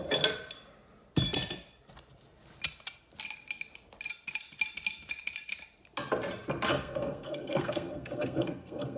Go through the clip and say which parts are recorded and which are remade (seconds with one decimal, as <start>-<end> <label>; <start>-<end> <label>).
0.0-6.7 recorded; 6.7-9.0 remade